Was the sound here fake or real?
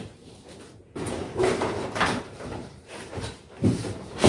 fake